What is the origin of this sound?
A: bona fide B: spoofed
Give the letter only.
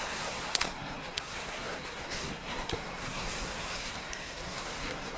B